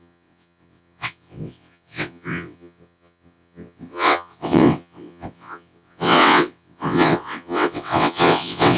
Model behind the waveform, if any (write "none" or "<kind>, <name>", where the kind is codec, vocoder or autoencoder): vocoder, WaveNeXt